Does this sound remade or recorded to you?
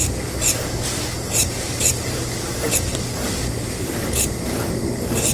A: remade